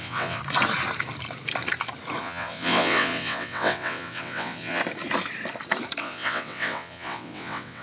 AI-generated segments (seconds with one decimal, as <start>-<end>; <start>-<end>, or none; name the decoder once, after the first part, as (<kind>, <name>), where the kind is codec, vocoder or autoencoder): 0.0-0.4 (vocoder, WaveNeXt); 2.2-4.8; 6.0-7.8